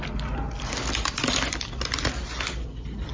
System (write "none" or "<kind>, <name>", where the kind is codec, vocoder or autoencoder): none